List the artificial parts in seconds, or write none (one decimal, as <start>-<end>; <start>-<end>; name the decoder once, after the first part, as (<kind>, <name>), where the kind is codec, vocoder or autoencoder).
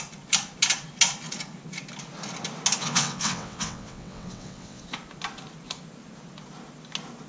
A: 2.8-4.8 (vocoder, WaveNeXt)